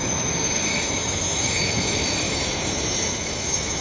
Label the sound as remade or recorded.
remade